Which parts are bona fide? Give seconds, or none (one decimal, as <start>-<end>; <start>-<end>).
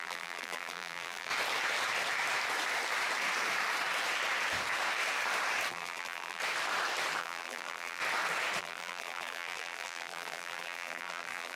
1.3-5.7; 6.4-7.2; 8.0-8.6